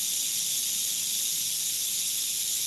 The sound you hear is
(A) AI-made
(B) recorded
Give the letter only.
B